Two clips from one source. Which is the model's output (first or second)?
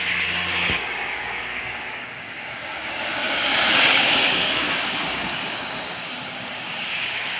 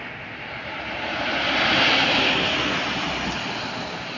first